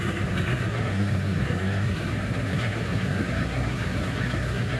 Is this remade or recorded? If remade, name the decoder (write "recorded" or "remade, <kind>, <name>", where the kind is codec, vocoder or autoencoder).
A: remade, codec, SNAC